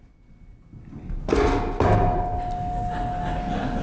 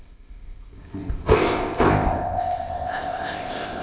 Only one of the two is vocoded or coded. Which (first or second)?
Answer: second